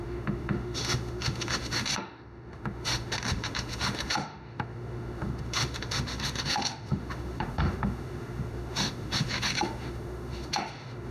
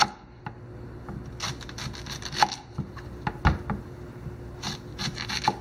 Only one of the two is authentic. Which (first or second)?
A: second